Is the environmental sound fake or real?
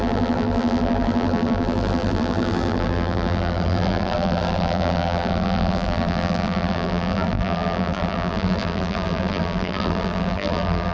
fake